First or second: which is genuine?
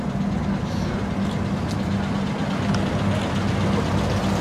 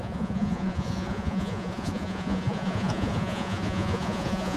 first